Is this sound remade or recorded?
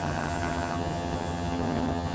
remade